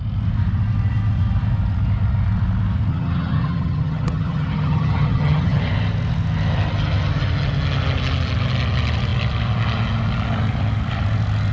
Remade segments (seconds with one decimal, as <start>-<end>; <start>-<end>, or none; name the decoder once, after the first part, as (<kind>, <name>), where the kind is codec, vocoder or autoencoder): 2.9-5.6 (vocoder, HiFi-GAN)